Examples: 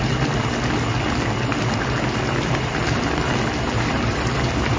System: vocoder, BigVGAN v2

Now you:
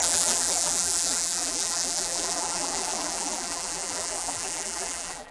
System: vocoder, BigVGAN v2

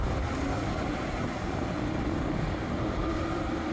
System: vocoder, BigVGAN v2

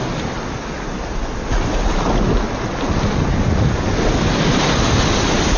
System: none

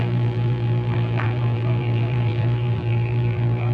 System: vocoder, BigVGAN v2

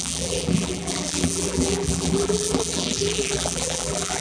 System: vocoder, BigVGAN v2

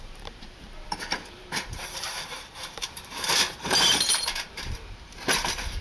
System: vocoder, BigVGAN v2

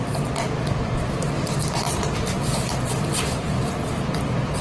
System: none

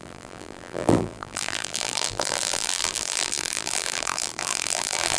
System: vocoder, BigVGAN v2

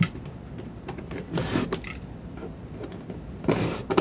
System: none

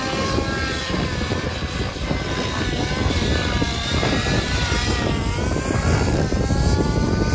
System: vocoder, BigVGAN v2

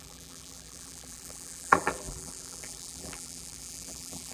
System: vocoder, BigVGAN v2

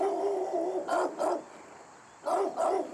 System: none